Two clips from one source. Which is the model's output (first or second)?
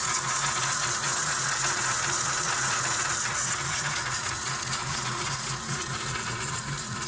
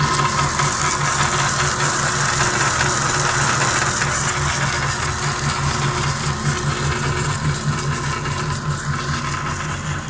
first